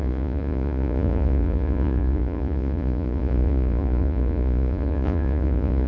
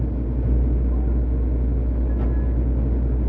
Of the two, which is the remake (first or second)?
first